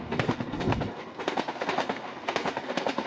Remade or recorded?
remade